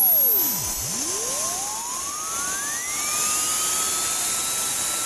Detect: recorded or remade recorded